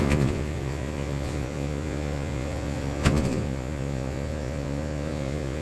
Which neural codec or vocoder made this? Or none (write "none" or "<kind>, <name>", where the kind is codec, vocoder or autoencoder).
vocoder, Vocos